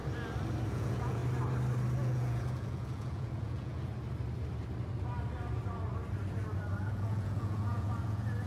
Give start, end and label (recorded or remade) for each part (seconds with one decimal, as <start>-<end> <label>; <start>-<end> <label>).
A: 0.0-0.7 recorded; 0.7-1.2 remade; 1.2-2.0 recorded; 2.0-3.9 remade; 3.9-6.8 recorded; 6.8-8.5 remade